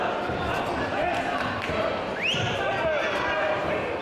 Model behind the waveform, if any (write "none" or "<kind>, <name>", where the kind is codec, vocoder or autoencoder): none